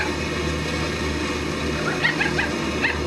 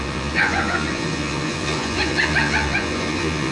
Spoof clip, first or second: second